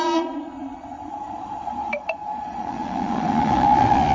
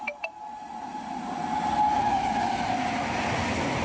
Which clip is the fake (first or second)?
first